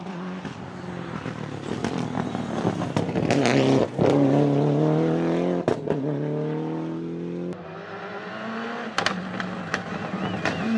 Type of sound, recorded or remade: recorded